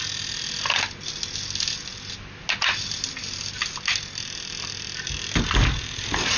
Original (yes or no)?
yes